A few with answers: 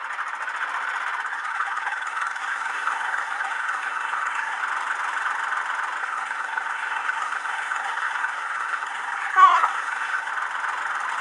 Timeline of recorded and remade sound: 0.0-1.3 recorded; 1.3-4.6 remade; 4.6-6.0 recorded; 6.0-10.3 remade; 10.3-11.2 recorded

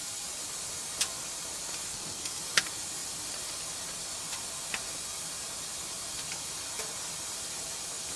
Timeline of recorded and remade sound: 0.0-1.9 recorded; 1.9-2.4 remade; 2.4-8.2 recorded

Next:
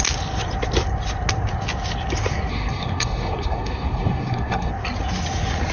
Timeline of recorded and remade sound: 0.0-2.5 recorded; 2.5-4.7 remade; 4.7-5.7 recorded

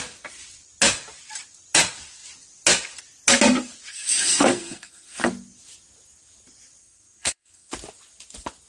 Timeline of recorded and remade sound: 0.0-3.9 recorded; 3.9-5.3 remade; 5.3-6.8 recorded; 6.8-7.7 remade; 7.7-8.7 recorded

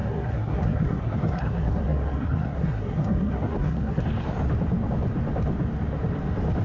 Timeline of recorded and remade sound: 0.0-4.0 remade; 4.0-6.6 recorded